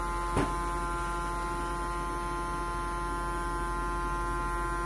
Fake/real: real